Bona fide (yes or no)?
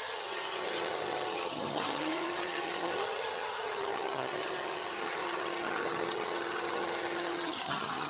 no